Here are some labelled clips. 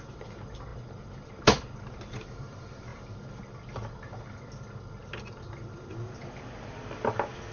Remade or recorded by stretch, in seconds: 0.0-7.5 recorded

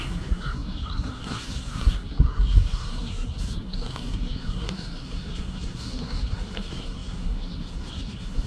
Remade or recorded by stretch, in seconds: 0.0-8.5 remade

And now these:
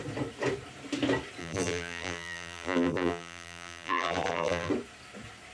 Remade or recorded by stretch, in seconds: 0.0-1.4 recorded; 1.4-4.7 remade; 4.7-5.5 recorded

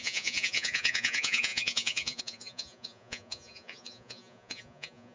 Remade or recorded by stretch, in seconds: 0.0-5.1 remade

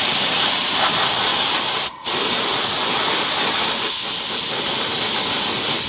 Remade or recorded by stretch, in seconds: 0.0-1.3 recorded; 1.3-4.8 remade; 4.8-5.9 recorded

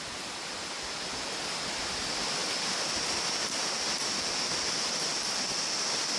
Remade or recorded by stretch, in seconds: 0.0-6.2 recorded

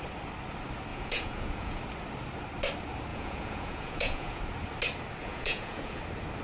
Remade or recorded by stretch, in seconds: 0.0-0.9 recorded; 0.9-1.8 remade; 1.8-3.1 recorded; 3.1-4.4 remade; 4.4-5.2 recorded; 5.2-6.0 remade; 6.0-6.4 recorded